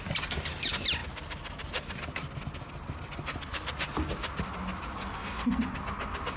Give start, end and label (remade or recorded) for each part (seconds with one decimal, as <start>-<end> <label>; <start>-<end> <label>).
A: 0.0-5.0 recorded; 5.0-5.6 remade; 5.6-6.4 recorded